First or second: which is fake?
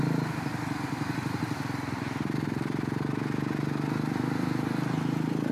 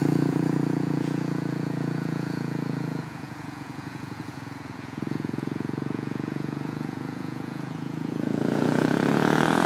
second